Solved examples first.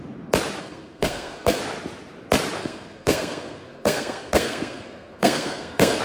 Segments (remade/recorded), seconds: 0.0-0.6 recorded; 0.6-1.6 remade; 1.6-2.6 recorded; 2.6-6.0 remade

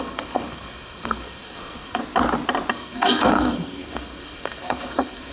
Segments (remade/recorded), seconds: 0.0-2.0 remade; 2.0-2.7 recorded; 2.7-5.3 remade

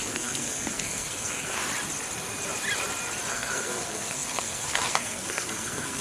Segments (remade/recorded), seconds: 0.0-1.6 remade; 1.6-3.3 recorded; 3.3-6.0 remade

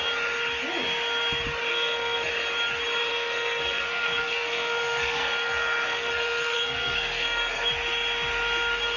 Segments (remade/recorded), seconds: 0.0-1.7 recorded; 1.7-2.3 remade; 2.3-3.1 recorded; 3.1-7.7 remade; 7.7-9.0 recorded

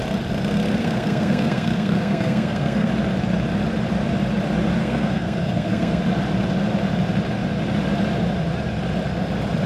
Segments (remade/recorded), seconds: 0.0-0.8 recorded; 0.8-2.9 remade; 2.9-4.8 recorded; 4.8-6.0 remade; 6.0-9.7 recorded

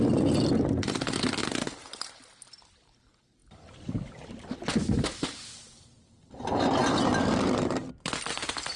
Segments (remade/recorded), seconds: 0.0-8.8 recorded

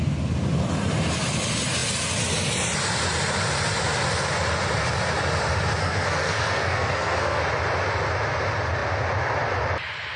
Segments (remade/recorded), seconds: 0.0-5.8 recorded; 5.8-7.4 remade; 7.4-10.2 recorded